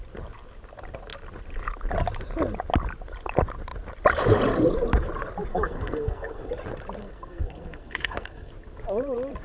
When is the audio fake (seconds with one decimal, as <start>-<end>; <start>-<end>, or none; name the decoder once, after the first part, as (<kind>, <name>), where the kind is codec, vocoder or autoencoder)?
5.5-6.5 (codec, SNAC); 7.0-8.5